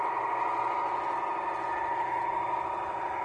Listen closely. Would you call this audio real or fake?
real